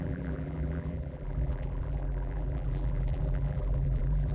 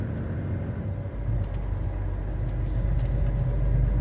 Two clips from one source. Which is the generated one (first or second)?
first